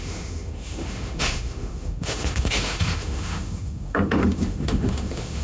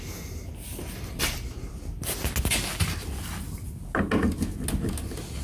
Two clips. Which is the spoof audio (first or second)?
first